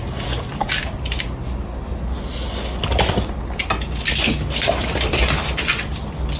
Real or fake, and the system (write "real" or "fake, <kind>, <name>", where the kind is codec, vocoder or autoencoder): real